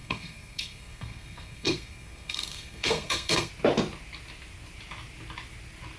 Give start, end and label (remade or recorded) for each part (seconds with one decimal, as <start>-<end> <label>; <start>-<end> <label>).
0.0-3.5 remade; 3.5-6.0 recorded